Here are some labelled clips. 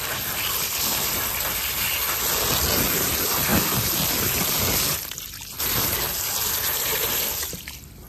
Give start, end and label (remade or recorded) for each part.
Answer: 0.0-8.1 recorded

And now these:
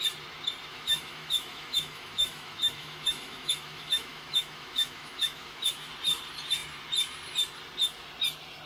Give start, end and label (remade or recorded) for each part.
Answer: 0.0-0.7 recorded; 0.7-5.9 remade; 5.9-8.7 recorded